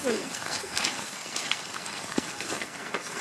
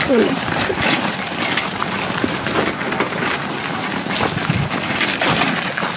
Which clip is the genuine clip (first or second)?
second